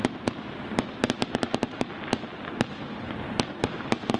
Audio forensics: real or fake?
real